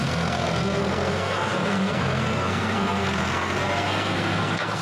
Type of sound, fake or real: fake